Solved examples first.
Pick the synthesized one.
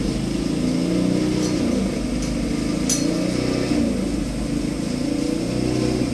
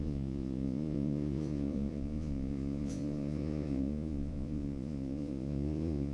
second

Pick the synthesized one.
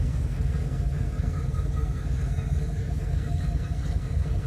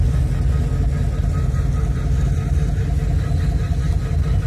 first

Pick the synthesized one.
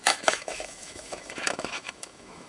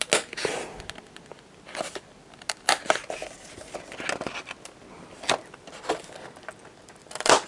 first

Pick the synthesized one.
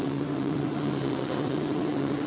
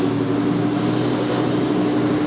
first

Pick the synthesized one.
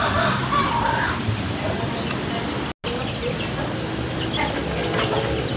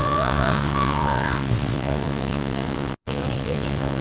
second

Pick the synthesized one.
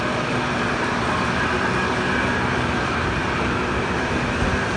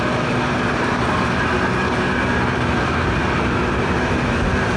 first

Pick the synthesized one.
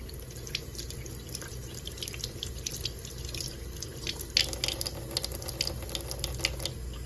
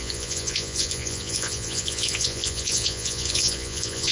second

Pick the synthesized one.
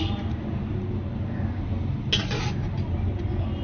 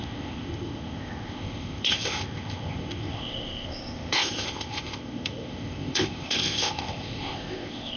second